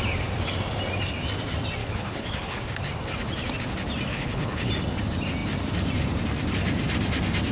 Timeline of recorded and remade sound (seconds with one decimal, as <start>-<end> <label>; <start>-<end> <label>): 0.0-1.8 recorded; 1.8-2.6 remade; 2.6-4.1 recorded; 4.1-4.7 remade; 4.7-7.5 recorded